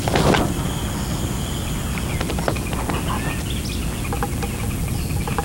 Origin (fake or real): real